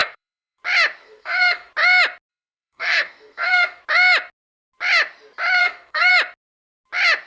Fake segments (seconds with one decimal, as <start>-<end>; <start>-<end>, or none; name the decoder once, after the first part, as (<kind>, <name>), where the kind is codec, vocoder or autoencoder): 0.0-0.6 (codec, SNAC); 1.0-1.7; 2.3-3.8; 5.6-6.1